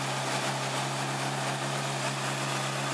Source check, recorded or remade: recorded